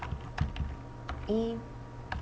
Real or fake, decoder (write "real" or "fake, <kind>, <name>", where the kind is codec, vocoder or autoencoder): real